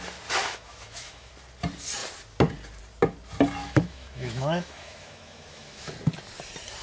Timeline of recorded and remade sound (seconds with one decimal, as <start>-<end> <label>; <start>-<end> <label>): 0.0-0.4 recorded; 0.4-1.3 remade; 1.3-3.6 recorded; 3.6-5.9 remade; 5.9-6.8 recorded